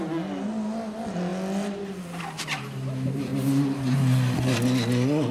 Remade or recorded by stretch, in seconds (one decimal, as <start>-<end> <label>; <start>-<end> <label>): 0.0-5.3 recorded